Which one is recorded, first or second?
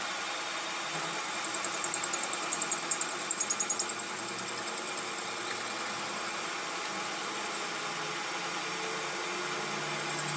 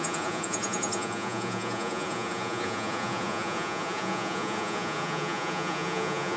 first